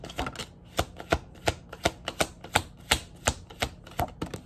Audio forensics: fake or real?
real